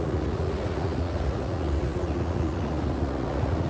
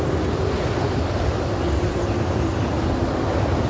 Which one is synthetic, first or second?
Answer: first